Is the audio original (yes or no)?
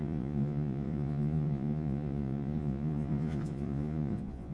no